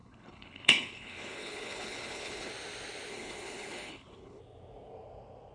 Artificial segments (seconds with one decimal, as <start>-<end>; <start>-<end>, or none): 0.0-2.5; 3.1-4.4